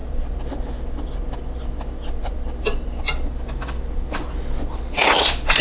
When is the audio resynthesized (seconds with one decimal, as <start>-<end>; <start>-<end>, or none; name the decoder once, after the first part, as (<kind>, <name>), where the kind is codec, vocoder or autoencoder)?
none